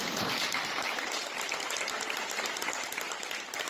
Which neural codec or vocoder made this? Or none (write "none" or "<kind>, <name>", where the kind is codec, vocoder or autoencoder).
none